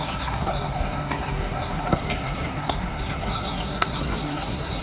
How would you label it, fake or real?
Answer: fake